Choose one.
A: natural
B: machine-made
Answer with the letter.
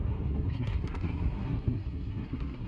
B